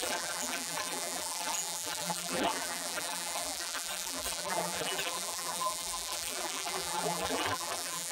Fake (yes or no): yes